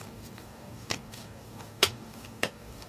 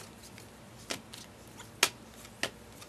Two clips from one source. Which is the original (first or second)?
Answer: second